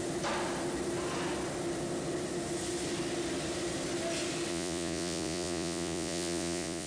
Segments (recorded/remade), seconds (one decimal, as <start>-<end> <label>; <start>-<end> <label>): 0.0-4.5 recorded; 4.5-6.9 remade